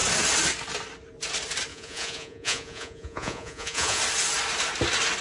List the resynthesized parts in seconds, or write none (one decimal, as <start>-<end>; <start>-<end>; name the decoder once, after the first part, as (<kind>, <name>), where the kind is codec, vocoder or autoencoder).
1.7-4.0 (vocoder, Vocos)